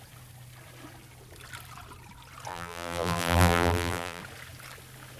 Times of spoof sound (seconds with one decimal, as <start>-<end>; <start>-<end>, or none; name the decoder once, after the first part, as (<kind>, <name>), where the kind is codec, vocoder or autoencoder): 2.5-4.2 (vocoder, BigVGAN v2)